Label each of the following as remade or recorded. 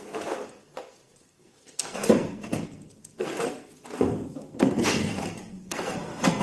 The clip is remade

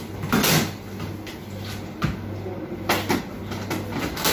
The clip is recorded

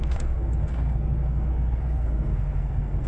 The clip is remade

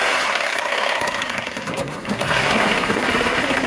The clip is remade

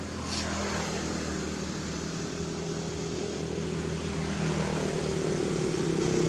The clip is recorded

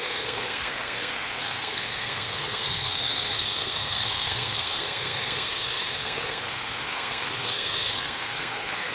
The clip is remade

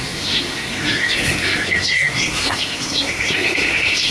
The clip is remade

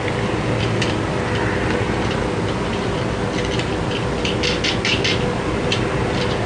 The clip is recorded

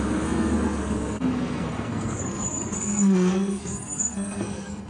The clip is remade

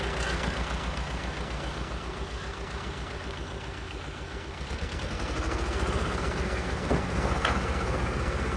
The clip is remade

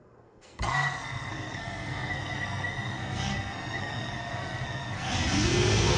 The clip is remade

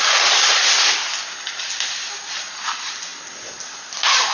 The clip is recorded